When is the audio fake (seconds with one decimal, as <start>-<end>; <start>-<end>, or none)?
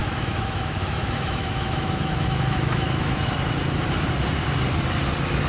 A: 0.0-3.3